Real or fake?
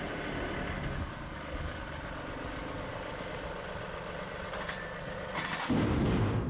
real